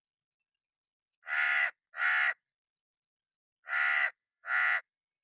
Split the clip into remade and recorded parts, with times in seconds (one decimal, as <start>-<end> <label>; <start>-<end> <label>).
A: 0.0-4.2 recorded; 4.2-4.8 remade; 4.8-5.2 recorded